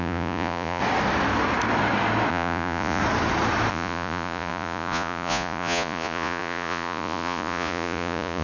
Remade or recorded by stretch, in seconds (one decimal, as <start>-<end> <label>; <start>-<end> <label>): 0.0-0.8 remade; 0.8-2.3 recorded; 2.3-3.0 remade; 3.0-3.7 recorded; 3.7-8.4 remade